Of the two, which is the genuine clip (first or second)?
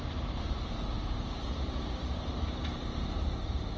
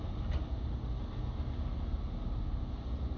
second